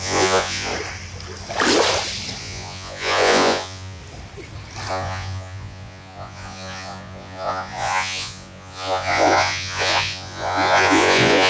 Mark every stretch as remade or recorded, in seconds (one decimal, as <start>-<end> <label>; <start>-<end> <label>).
0.0-0.7 remade; 0.7-2.4 recorded; 2.4-4.0 remade; 4.0-4.9 recorded; 4.9-11.5 remade